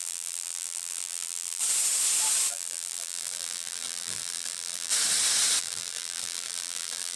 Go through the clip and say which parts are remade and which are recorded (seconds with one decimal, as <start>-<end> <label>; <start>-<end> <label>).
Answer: 0.0-1.6 remade; 1.6-2.5 recorded; 2.5-4.9 remade; 4.9-5.6 recorded; 5.6-7.2 remade